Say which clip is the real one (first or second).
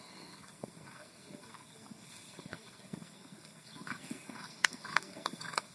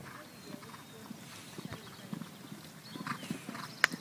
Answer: second